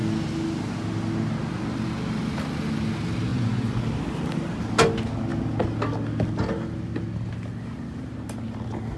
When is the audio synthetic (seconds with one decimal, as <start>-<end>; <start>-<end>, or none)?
3.3-3.8